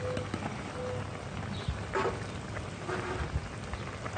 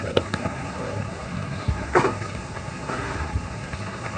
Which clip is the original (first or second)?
first